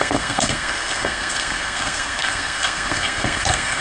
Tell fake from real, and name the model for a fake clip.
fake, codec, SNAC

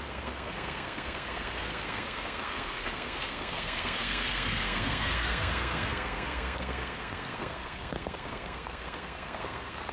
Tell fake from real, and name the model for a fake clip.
fake, codec, SNAC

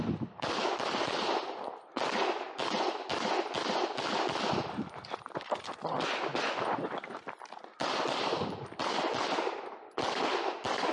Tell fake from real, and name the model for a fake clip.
real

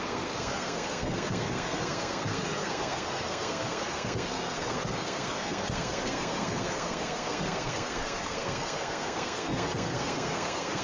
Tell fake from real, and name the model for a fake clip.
fake, codec, SNAC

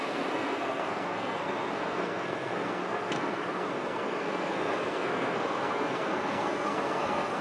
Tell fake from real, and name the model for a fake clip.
fake, codec, SNAC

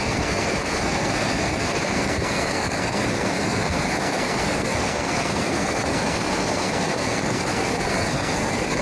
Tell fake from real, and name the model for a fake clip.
fake, codec, SNAC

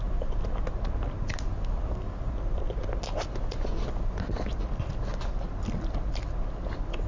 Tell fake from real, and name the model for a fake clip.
real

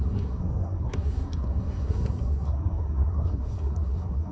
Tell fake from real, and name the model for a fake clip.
fake, codec, SNAC